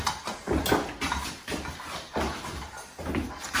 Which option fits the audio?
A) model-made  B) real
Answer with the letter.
B